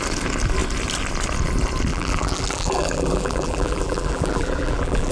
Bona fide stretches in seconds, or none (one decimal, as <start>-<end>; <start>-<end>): 0.0-1.9